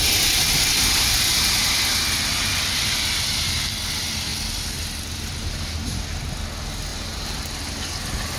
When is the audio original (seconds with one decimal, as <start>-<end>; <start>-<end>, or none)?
0.0-6.9; 7.6-8.4